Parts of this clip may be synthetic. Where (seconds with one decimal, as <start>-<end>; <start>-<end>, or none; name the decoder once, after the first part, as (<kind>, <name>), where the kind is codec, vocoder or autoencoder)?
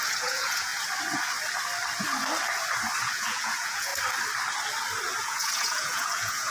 0.0-0.7 (vocoder, Vocos); 3.0-3.9; 5.2-6.5